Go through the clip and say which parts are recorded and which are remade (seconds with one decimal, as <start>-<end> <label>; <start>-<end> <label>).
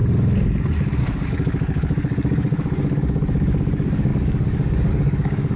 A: 0.0-1.0 recorded; 1.0-5.6 remade